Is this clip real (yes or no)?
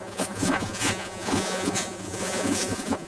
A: no